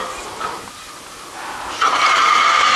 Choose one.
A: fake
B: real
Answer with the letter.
B